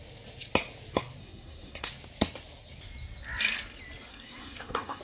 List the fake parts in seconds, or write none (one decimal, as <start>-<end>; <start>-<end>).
1.2-1.9; 4.1-5.0

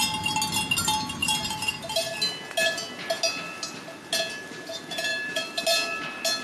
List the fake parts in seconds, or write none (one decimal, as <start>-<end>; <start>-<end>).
1.2-2.3; 5.1-5.6

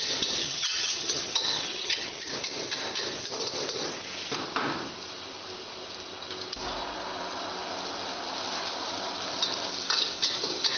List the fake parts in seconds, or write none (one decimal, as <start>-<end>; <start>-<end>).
0.4-2.3

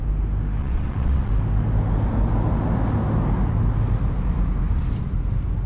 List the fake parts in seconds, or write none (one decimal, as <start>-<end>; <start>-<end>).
0.6-1.3

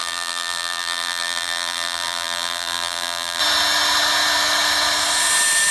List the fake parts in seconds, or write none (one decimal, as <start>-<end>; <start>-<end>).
0.0-3.4

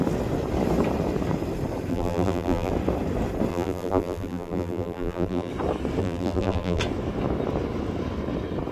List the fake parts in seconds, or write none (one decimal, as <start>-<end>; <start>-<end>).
1.9-2.7; 3.5-5.5; 6.0-6.8

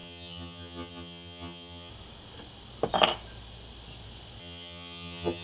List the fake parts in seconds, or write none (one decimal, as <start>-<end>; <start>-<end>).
0.0-1.9; 4.4-5.4

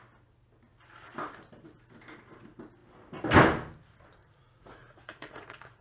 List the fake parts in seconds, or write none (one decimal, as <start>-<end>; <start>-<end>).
4.2-5.8